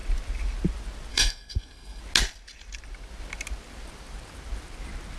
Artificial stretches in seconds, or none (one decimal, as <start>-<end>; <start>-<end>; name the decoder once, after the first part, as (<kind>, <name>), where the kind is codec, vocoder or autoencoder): 1.1-2.0 (codec, SNAC)